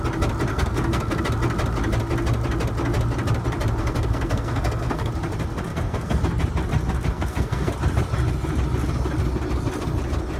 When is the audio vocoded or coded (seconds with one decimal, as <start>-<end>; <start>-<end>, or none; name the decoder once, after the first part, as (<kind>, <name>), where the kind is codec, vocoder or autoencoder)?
0.5-1.2 (codec, SNAC); 3.8-5.1; 5.7-6.2; 7.1-7.7